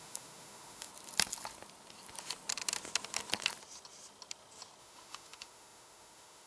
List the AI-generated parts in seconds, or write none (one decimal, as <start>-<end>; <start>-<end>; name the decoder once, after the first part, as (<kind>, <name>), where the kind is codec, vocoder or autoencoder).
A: 0.0-0.9 (autoencoder, DAC-VAE); 4.8-6.5